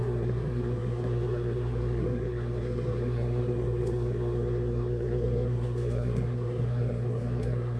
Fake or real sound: fake